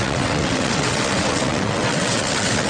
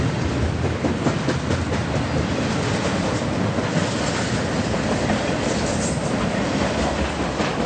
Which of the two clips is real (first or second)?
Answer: second